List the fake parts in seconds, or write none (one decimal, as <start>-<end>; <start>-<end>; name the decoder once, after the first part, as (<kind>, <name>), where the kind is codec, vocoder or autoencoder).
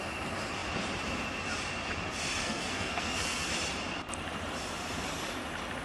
2.4-3.5 (codec, SNAC)